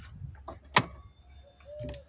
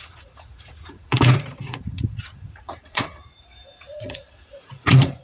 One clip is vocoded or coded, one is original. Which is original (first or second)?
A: first